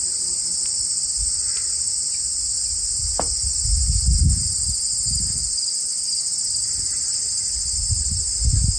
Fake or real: real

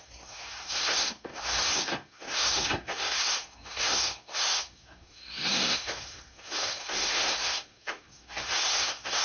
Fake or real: fake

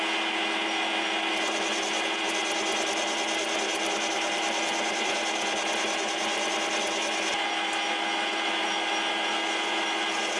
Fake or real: real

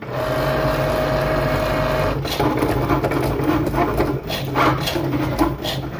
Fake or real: real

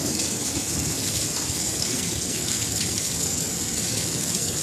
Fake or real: fake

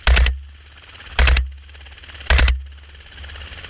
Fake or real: real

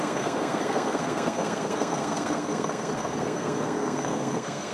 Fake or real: fake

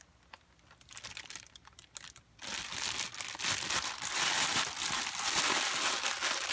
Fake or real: real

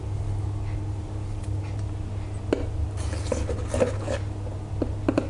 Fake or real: real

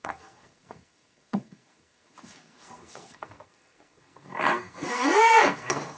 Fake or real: fake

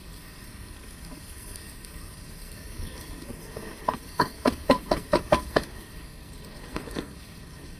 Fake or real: fake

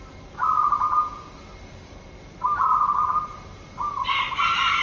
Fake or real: real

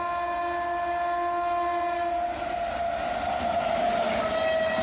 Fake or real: real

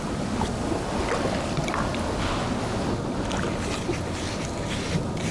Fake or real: real